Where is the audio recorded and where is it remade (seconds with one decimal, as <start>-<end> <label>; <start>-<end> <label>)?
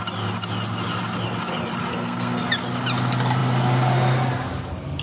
0.0-1.9 recorded; 1.9-2.4 remade; 2.4-5.0 recorded